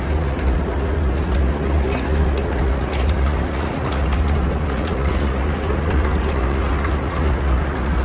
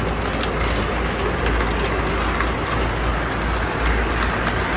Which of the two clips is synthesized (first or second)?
first